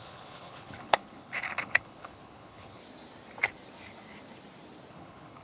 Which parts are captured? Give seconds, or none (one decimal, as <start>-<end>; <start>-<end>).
2.8-4.9